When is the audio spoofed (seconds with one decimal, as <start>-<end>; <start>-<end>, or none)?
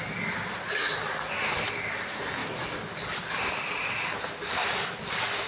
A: none